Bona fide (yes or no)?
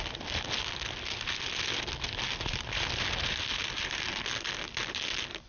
yes